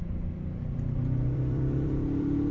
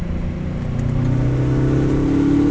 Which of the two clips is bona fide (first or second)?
second